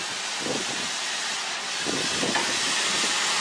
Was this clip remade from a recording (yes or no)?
no